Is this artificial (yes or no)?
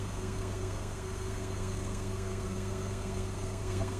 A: yes